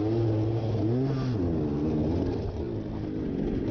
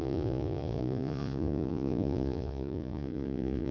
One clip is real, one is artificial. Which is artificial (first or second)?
second